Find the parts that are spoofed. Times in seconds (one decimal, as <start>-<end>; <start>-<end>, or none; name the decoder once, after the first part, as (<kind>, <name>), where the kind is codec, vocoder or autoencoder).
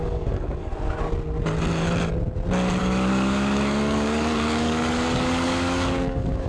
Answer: 0.0-0.7 (codec, DAC); 2.8-6.5